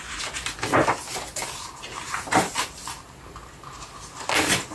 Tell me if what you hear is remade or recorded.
recorded